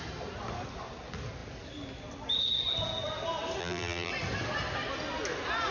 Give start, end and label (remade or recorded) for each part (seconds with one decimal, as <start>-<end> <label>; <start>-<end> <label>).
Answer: 0.0-3.6 recorded; 3.6-4.1 remade; 4.1-5.7 recorded